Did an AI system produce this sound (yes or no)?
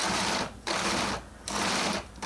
no